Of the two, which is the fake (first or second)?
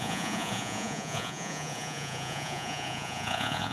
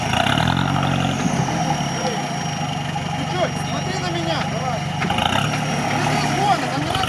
first